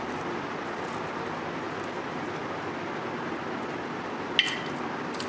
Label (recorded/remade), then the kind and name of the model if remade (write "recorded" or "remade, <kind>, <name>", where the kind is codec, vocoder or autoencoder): recorded